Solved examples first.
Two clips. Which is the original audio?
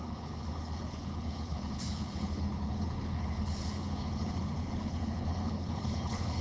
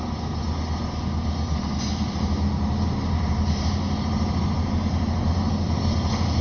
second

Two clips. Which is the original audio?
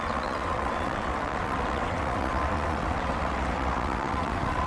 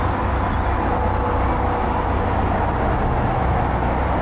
second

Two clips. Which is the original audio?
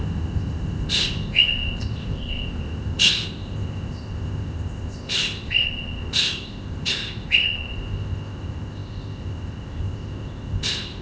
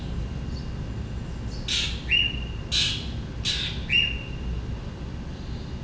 second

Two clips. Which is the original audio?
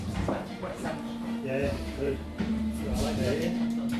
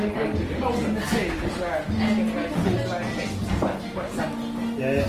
second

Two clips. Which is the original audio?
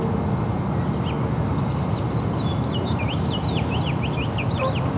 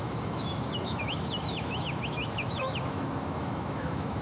first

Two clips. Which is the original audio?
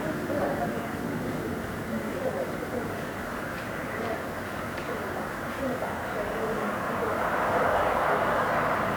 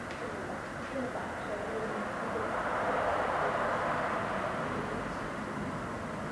second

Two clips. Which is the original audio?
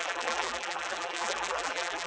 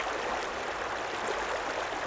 second